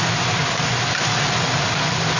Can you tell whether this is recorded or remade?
recorded